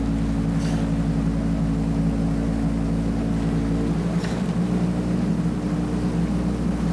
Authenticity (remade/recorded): recorded